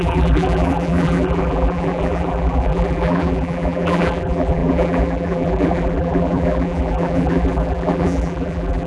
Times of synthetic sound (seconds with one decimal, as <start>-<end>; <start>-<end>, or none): 0.0-8.9